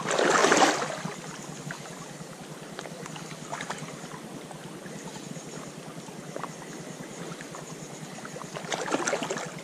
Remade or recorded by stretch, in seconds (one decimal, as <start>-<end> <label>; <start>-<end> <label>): 0.0-9.6 recorded